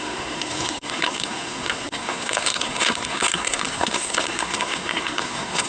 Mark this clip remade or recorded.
remade